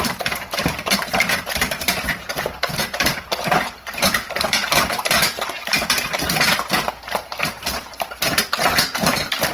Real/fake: fake